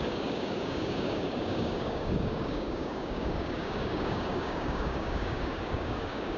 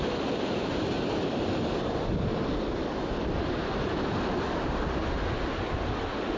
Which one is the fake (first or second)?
first